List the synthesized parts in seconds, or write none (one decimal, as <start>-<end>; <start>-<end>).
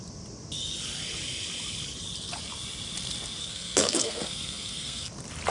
3.4-5.1